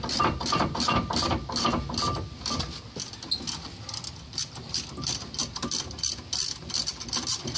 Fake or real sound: fake